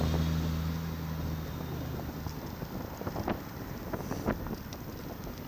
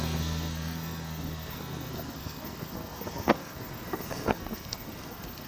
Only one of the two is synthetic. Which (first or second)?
second